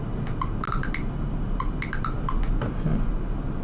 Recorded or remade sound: recorded